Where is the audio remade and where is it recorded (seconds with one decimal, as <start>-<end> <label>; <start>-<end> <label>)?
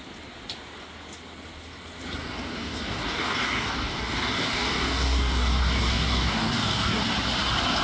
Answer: 0.0-2.2 recorded; 2.2-6.9 remade; 6.9-7.8 recorded